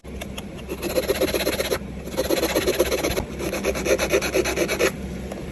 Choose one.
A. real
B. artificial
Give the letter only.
A